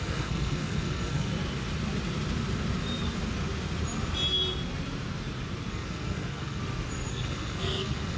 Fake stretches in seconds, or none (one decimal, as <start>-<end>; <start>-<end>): 0.0-1.3; 5.7-6.6; 7.1-8.2